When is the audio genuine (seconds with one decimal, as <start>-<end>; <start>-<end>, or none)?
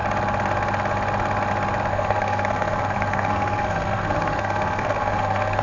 0.0-1.9